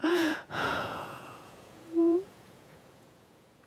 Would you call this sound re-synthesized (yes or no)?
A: yes